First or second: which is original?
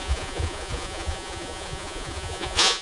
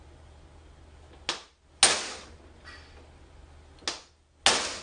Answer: second